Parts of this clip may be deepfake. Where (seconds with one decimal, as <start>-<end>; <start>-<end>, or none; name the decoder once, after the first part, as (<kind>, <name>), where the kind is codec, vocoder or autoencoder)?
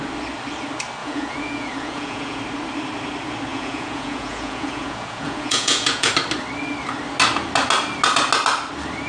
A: 1.0-2.4 (vocoder, Vocos); 3.5-6.1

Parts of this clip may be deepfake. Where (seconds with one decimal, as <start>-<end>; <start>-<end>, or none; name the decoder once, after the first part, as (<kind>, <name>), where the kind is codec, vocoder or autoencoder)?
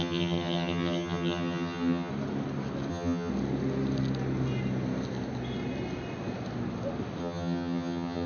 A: 0.0-2.1 (vocoder, HiFi-GAN); 2.9-3.3; 7.2-8.3